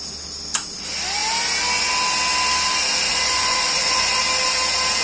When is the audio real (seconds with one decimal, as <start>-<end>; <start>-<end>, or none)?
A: 0.0-3.1; 4.2-5.0